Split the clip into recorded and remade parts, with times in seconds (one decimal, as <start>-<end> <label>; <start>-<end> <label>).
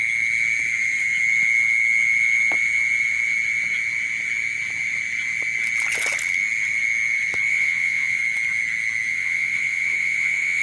0.0-7.5 recorded; 7.5-8.2 remade; 8.2-9.1 recorded; 9.1-10.6 remade